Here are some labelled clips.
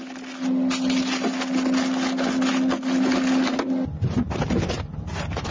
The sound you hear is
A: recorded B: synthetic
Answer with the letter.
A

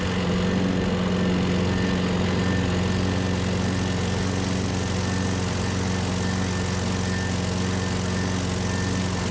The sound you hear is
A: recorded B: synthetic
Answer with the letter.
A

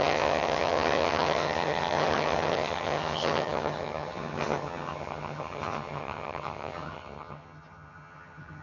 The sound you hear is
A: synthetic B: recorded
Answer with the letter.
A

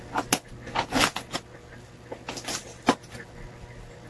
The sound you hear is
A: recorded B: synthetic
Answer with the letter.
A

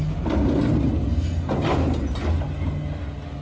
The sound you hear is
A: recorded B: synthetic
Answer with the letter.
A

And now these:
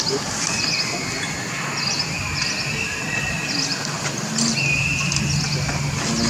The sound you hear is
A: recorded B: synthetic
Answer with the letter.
A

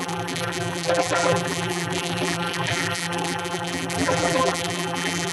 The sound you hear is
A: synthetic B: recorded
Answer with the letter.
A